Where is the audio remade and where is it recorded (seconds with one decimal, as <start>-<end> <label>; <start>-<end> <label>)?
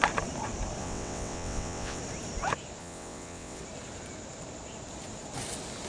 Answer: 0.0-0.8 recorded; 0.8-2.0 remade; 2.0-2.8 recorded; 2.8-3.6 remade; 3.6-5.9 recorded